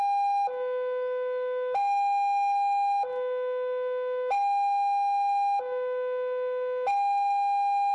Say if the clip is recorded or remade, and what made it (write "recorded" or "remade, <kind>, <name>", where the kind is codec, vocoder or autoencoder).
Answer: recorded